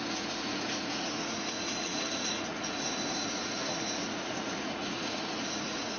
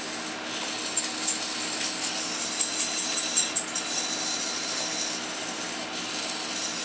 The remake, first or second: first